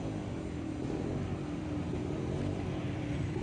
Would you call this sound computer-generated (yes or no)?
no